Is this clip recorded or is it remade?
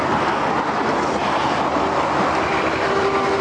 recorded